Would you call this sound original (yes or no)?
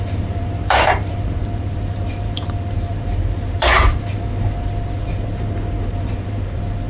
no